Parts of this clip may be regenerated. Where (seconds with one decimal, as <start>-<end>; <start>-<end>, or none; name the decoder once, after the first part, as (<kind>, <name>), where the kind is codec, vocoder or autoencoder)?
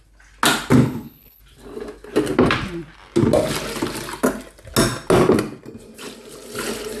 0.8-1.4 (codec, HILCodec)